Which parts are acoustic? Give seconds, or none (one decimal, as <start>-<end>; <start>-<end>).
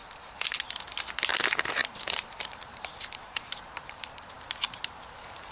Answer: 0.0-1.8; 4.3-5.5